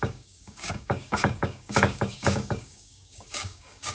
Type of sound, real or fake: fake